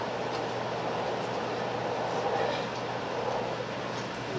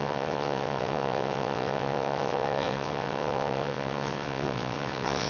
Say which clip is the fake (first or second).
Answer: second